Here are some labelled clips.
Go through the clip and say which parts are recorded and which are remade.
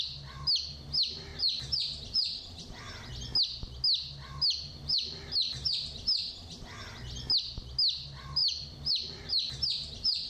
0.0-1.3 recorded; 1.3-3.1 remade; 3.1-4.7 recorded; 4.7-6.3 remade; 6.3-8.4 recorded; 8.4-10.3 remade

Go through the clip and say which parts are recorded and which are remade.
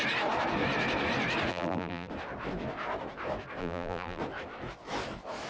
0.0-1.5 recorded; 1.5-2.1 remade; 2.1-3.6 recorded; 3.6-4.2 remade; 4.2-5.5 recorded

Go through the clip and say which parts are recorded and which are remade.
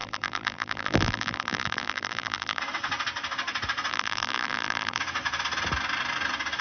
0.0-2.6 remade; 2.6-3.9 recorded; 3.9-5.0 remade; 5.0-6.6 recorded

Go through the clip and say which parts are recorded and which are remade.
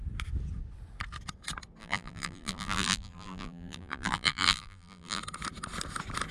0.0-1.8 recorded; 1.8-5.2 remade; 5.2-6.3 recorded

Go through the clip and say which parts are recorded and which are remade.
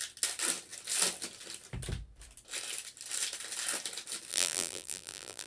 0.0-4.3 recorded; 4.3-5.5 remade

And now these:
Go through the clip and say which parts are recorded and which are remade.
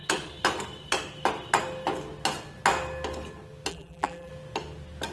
0.0-3.7 recorded; 3.7-4.3 remade; 4.3-5.1 recorded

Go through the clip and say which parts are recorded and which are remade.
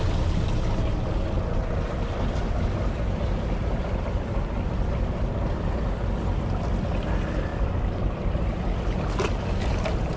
0.0-7.5 recorded; 7.5-8.6 remade; 8.6-10.2 recorded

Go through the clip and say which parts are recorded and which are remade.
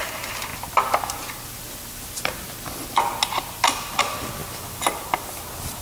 0.0-5.8 recorded